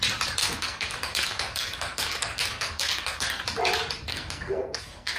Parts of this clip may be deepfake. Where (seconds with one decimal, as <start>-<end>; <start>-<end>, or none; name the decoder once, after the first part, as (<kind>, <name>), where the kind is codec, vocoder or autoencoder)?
0.4-3.4 (codec, SNAC); 4.1-5.2